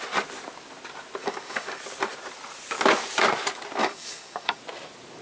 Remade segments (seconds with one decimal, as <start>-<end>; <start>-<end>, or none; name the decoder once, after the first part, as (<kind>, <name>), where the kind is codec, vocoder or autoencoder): 1.2-1.8 (codec, DAC); 3.8-4.6